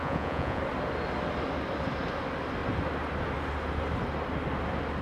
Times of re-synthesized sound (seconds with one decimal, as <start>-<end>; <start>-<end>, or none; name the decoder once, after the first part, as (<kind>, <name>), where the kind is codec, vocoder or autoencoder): 0.0-0.6 (vocoder, Vocos)